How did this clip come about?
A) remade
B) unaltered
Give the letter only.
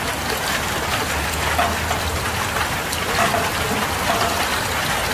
B